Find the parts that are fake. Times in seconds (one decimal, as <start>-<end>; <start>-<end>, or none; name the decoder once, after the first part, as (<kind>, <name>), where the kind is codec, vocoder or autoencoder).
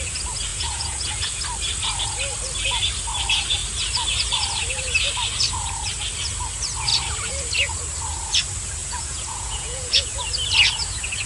0.5-1.4 (vocoder, Vocos); 8.8-10.1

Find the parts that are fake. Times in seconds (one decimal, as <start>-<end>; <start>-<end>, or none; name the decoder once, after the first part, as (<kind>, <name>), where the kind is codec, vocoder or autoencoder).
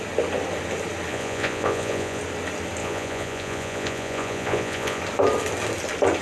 1.1-2.2 (vocoder, Vocos); 2.8-5.0